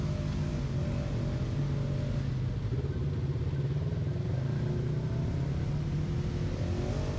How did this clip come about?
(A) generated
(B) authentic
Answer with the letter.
B